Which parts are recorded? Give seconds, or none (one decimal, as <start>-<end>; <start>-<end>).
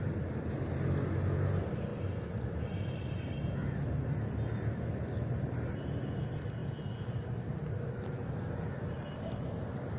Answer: 0.0-10.0